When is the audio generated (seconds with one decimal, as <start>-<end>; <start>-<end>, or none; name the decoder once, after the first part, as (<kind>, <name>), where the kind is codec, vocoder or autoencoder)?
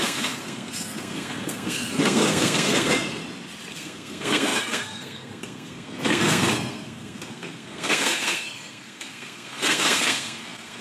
0.0-3.2 (codec, SNAC); 3.7-10.8